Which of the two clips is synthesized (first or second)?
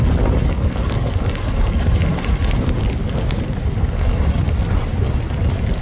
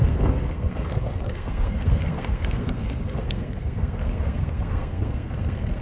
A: second